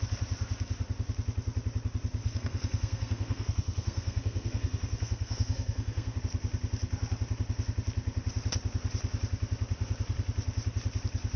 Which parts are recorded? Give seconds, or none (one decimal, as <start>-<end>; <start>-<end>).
0.0-2.2; 6.2-11.4